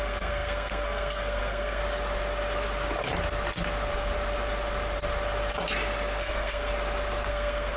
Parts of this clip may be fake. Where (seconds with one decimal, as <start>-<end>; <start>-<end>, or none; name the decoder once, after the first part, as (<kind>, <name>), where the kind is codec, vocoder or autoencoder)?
0.0-1.8 (codec, SNAC); 6.2-6.7; 7.3-7.8